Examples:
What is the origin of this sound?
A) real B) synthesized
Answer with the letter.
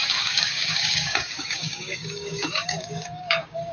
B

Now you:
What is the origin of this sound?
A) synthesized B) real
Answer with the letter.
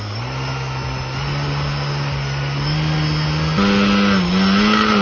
B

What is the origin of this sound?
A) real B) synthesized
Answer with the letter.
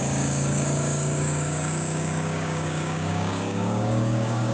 B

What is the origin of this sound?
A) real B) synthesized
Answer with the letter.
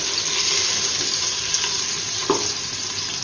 A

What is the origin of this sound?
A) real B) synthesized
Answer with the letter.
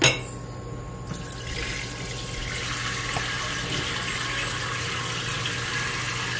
A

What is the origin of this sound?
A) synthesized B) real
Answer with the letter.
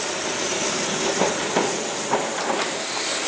B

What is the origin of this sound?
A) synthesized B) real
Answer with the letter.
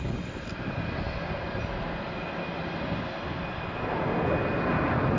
B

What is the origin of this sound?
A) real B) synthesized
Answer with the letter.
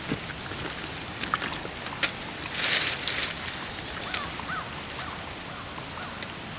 A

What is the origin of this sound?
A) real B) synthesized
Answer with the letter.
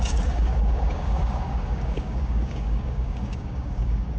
B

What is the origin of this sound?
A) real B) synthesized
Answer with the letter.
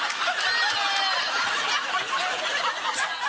A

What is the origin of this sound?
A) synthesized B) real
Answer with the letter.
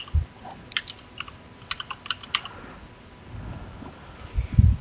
B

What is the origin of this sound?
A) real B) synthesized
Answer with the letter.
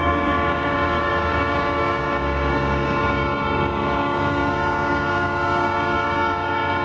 B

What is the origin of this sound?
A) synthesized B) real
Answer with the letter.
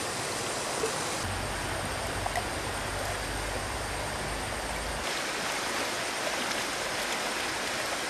B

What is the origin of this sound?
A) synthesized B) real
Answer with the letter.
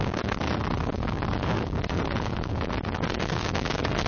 A